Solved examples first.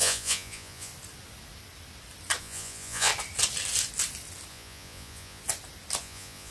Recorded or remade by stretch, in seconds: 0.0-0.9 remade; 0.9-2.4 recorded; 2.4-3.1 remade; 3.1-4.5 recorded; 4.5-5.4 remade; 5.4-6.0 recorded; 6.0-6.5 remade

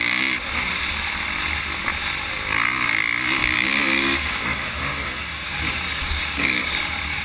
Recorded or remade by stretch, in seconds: 0.0-3.4 recorded; 3.4-7.2 remade

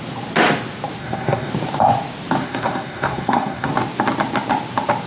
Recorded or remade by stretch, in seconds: 0.0-1.0 recorded; 1.0-1.5 remade; 1.5-2.4 recorded; 2.4-3.7 remade; 3.7-5.1 recorded

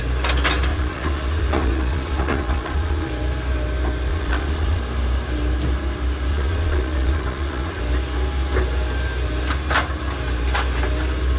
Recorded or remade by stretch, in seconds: 0.0-0.7 recorded; 0.7-3.1 remade; 3.1-4.1 recorded; 4.1-4.8 remade; 4.8-6.3 recorded; 6.3-7.8 remade; 7.8-11.4 recorded